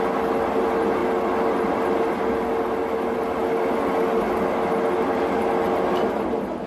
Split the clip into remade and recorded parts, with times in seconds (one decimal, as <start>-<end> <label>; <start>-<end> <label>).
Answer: 0.0-6.7 recorded